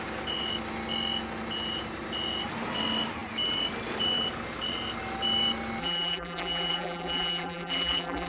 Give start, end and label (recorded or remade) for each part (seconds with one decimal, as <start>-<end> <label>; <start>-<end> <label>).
0.0-5.8 recorded; 5.8-8.3 remade

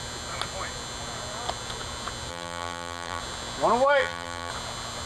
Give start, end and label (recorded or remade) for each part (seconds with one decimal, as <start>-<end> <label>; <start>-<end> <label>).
0.0-2.3 recorded; 2.3-3.2 remade; 3.2-4.0 recorded; 4.0-4.5 remade; 4.5-5.1 recorded

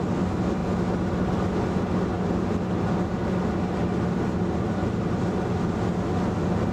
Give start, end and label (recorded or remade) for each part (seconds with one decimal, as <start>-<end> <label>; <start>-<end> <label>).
0.0-4.8 recorded; 4.8-5.7 remade; 5.7-6.7 recorded